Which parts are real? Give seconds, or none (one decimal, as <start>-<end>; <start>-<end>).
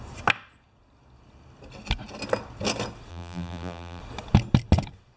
0.0-3.1; 4.0-5.2